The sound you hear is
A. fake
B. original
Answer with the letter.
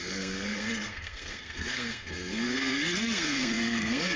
A